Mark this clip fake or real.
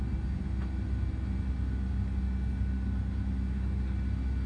real